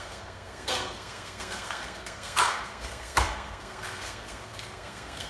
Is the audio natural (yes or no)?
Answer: no